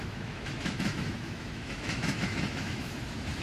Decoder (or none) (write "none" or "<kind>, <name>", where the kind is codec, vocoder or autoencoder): autoencoder, DAC-VAE